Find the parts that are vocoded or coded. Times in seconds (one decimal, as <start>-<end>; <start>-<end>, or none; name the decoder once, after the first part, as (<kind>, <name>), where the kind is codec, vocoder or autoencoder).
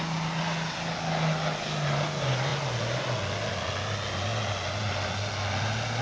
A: none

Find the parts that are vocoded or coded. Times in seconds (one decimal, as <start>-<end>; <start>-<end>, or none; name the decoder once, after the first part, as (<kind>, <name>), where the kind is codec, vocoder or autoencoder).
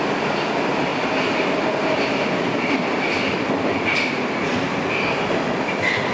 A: none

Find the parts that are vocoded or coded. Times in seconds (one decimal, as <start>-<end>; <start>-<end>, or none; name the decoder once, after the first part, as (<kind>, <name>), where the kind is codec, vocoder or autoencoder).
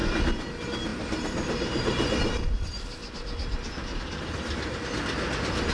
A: none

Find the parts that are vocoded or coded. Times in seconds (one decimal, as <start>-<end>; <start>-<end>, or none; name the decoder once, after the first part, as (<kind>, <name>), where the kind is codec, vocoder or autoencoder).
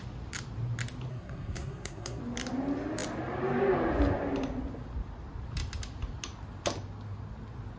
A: 1.1-2.2 (codec, SNAC)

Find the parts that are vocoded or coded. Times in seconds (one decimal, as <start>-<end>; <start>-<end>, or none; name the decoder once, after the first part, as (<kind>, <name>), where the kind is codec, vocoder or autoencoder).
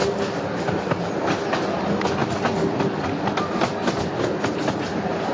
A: none